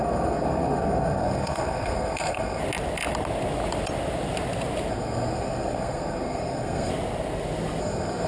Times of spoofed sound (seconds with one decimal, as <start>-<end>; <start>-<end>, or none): 0.0-2.6; 4.9-6.9; 7.8-8.3